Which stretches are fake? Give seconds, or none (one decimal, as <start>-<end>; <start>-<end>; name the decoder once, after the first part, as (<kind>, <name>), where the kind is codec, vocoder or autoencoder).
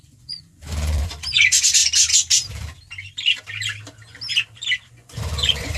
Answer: 0.0-1.8 (vocoder, Vocos); 4.9-5.8